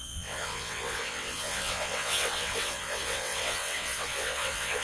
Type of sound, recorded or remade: remade